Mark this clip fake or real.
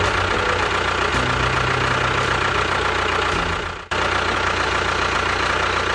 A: real